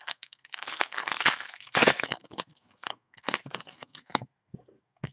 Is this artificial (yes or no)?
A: yes